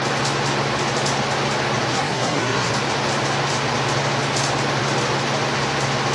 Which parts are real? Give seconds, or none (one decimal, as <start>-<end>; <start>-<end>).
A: 0.0-1.9; 2.7-6.1